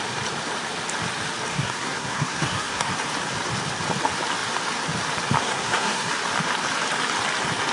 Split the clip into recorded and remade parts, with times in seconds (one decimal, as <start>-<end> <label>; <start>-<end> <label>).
0.0-1.5 recorded; 1.5-2.9 remade; 2.9-5.4 recorded; 5.4-6.1 remade; 6.1-7.7 recorded